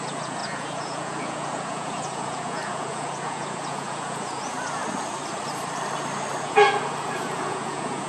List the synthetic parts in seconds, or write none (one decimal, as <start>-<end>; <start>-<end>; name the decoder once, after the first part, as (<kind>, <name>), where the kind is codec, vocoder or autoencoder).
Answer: 0.0-4.8 (vocoder, Vocos); 6.4-8.1